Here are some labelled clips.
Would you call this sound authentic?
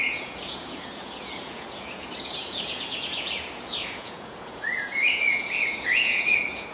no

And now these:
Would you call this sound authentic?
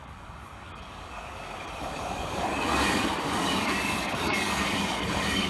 no